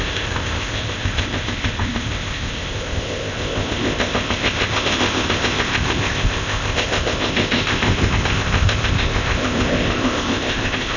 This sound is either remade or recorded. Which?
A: remade